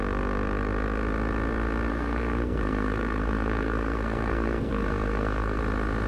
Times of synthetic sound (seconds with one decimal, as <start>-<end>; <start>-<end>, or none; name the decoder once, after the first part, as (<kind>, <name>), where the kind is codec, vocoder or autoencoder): 1.9-5.6 (codec, SNAC)